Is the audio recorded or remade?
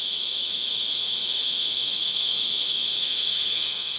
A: remade